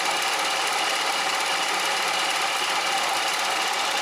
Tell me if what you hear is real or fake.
real